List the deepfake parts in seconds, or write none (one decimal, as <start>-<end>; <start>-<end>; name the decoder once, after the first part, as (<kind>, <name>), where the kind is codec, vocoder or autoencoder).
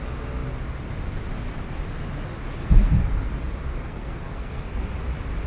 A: 2.6-3.3 (codec, SNAC); 3.7-4.9